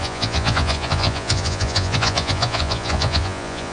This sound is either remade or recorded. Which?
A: remade